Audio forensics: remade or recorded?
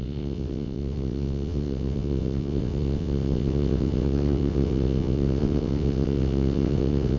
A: remade